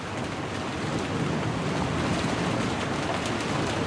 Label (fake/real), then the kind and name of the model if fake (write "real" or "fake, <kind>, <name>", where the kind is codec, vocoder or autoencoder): real